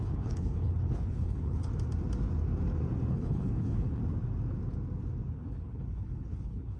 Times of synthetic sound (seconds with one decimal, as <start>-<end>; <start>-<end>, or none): 0.0-1.7; 3.1-4.0; 5.3-6.8